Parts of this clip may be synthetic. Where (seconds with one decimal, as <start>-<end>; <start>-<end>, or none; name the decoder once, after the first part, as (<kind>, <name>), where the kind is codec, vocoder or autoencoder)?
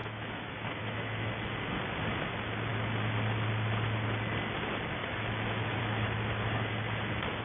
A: 0.0-1.3 (autoencoder, DAC-VAE); 5.0-5.8